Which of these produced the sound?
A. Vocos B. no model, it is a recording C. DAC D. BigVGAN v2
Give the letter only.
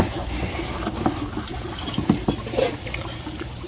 B